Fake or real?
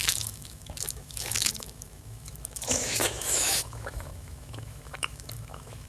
fake